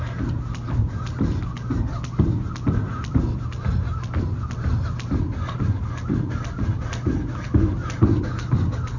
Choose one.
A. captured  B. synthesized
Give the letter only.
A